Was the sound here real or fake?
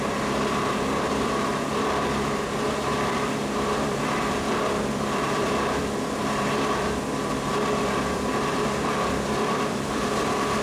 fake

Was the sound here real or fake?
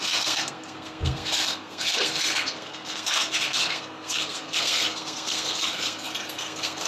fake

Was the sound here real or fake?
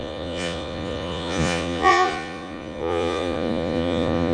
fake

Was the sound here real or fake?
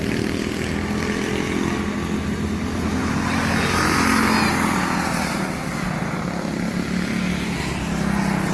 real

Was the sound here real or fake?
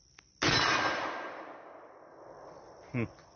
real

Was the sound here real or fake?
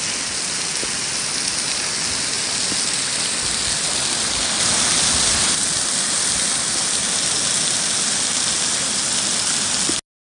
real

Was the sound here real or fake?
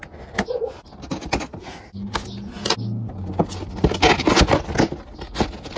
real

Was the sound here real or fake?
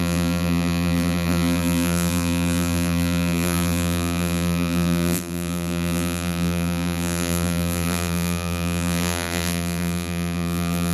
fake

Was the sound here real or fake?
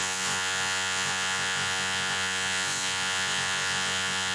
fake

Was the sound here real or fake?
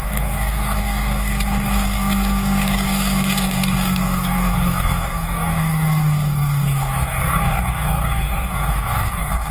fake